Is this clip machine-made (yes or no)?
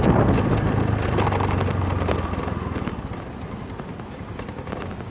no